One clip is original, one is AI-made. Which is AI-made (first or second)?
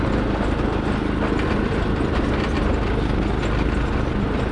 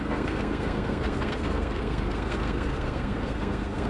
second